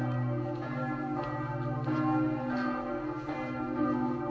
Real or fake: real